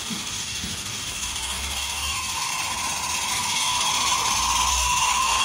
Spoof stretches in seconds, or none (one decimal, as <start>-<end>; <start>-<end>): 0.0-2.5; 3.3-3.9; 4.7-5.4